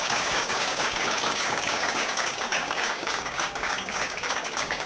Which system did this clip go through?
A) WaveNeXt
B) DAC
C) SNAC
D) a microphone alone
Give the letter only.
B